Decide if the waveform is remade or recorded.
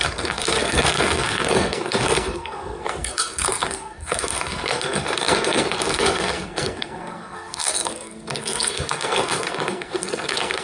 remade